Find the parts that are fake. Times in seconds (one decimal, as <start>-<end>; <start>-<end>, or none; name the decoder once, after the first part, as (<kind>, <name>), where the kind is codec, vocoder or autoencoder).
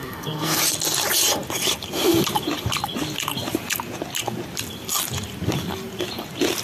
0.0-0.6 (codec, SNAC)